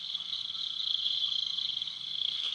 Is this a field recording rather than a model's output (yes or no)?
no